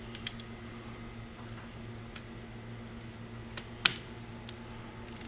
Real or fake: real